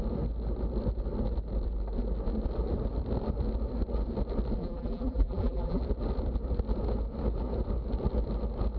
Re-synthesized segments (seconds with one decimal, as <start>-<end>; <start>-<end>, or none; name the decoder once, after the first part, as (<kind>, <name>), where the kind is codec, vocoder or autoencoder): 4.6-5.8 (vocoder, BigVGAN v2)